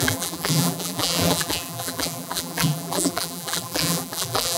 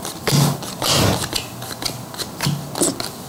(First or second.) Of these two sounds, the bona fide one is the second